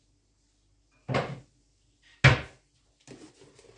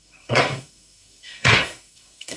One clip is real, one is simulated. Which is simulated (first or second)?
second